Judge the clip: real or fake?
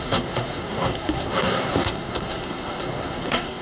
fake